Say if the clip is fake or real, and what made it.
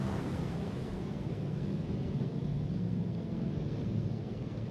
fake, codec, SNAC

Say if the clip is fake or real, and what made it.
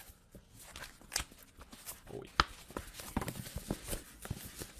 real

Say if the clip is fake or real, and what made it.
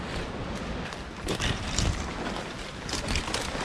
real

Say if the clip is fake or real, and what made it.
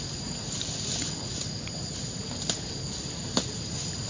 real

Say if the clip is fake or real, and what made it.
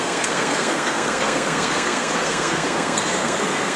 fake, codec, SNAC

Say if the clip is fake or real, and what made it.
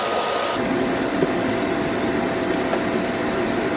real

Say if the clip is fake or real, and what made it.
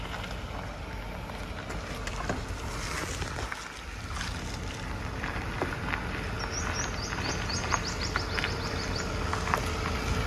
real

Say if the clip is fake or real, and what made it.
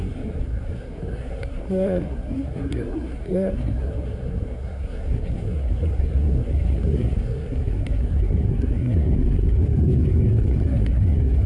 fake, codec, SNAC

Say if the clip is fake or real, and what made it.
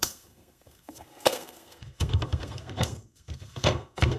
fake, codec, SNAC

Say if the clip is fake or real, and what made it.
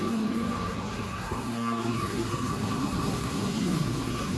fake, codec, SNAC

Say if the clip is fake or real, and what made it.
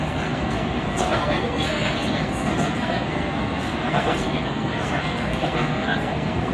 fake, codec, SNAC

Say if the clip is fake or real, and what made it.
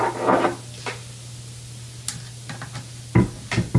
real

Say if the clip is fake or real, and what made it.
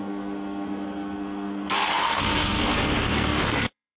fake, codec, SNAC